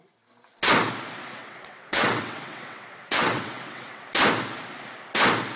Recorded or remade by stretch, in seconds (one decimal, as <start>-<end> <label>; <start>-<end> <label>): 0.0-1.4 recorded; 1.4-4.0 remade; 4.0-5.6 recorded